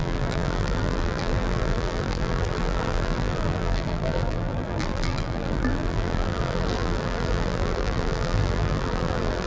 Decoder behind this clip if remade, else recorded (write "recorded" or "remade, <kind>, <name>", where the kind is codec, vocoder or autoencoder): remade, vocoder, BigVGAN v2